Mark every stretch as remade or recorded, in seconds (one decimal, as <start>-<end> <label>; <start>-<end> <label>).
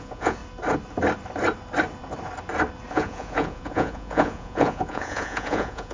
0.0-0.4 remade; 0.4-2.9 recorded; 2.9-5.9 remade